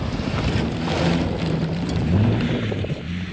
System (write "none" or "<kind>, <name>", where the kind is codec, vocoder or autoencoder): vocoder, BigVGAN v2